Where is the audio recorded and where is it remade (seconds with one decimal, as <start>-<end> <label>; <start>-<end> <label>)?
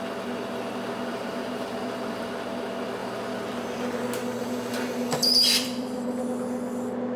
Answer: 0.0-1.1 recorded; 1.1-2.3 remade; 2.3-3.0 recorded; 3.0-4.0 remade; 4.0-4.4 recorded; 4.4-6.2 remade; 6.2-7.2 recorded